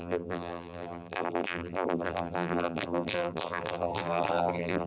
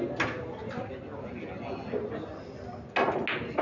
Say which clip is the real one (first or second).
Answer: second